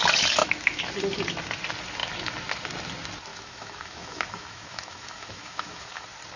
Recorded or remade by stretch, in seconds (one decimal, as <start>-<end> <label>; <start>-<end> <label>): 0.0-0.4 recorded; 0.4-0.9 remade; 0.9-3.3 recorded; 3.3-6.0 remade; 6.0-6.4 recorded